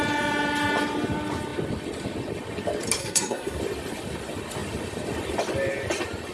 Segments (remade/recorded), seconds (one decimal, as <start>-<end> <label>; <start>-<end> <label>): 0.0-3.0 recorded; 3.0-3.6 remade; 3.6-6.3 recorded